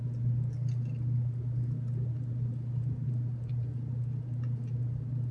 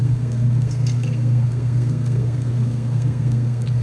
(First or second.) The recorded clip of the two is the first